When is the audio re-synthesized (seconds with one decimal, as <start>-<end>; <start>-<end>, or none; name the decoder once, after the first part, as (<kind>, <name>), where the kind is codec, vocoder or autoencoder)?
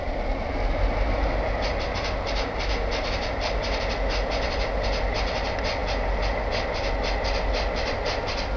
none